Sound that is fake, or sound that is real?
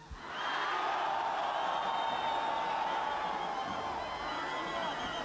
real